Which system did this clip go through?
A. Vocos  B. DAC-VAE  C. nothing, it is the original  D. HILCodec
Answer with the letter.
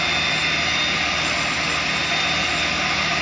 C